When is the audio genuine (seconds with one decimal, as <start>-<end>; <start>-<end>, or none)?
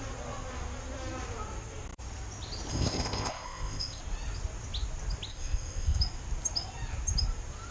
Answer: 0.0-2.7; 4.0-5.3; 6.0-7.7